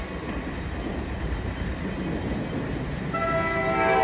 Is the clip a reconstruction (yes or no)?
no